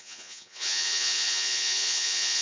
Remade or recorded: remade